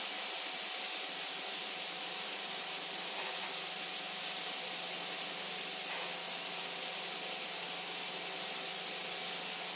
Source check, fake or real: real